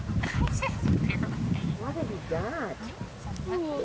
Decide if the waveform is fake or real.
real